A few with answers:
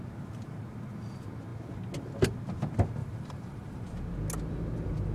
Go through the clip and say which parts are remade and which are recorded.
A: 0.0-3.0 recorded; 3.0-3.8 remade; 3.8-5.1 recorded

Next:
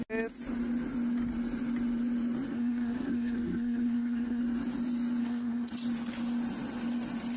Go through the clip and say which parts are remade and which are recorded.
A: 0.0-2.5 recorded; 2.5-4.4 remade; 4.4-5.2 recorded; 5.2-5.7 remade; 5.7-7.4 recorded

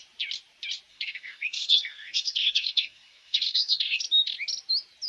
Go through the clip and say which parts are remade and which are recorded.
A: 0.0-0.9 recorded; 0.9-4.0 remade; 4.0-5.1 recorded

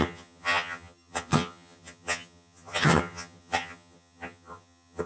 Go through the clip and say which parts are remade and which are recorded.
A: 0.0-5.1 remade

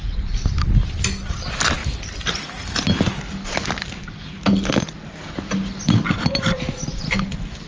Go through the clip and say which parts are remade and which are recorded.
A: 0.0-7.7 recorded

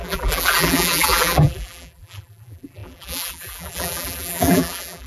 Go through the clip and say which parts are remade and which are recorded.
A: 0.0-5.1 remade